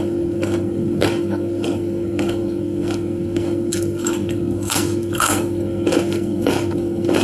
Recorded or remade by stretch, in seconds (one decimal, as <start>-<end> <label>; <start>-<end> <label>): 0.0-7.2 remade